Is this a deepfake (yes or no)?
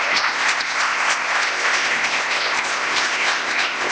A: yes